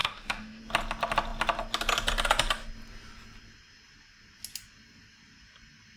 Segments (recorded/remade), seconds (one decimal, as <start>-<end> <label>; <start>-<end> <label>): 0.0-0.6 remade; 0.6-6.0 recorded